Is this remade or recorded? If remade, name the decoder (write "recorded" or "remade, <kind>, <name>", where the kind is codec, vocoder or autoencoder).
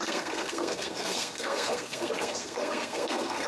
remade, codec, SNAC